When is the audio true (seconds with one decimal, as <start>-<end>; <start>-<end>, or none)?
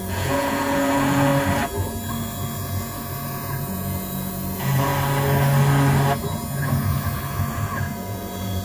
1.3-2.1; 4.9-7.5